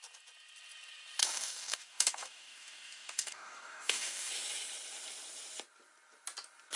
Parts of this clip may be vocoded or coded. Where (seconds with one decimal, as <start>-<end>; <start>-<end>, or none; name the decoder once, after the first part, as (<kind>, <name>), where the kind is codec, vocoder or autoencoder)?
1.2-4.3 (codec, DAC)